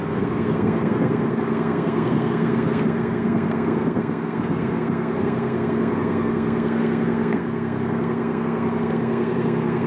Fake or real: fake